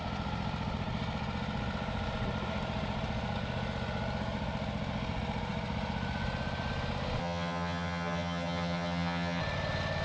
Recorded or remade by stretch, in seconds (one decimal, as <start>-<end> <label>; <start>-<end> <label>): 0.0-7.2 recorded; 7.2-9.4 remade; 9.4-10.0 recorded